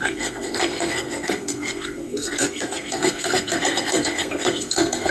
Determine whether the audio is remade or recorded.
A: remade